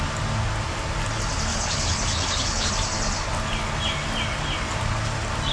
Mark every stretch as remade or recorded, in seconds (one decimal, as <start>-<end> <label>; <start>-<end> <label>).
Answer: 0.0-1.5 recorded; 1.5-2.7 remade; 2.7-5.5 recorded